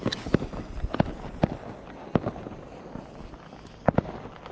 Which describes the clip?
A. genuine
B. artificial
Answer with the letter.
A